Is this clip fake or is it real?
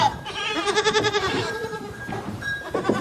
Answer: fake